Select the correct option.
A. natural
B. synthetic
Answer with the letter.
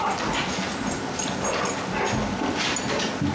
A